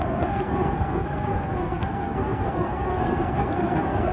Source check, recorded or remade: remade